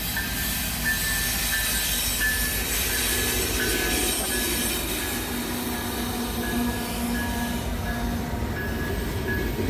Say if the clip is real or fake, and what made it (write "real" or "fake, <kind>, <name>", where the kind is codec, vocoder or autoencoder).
real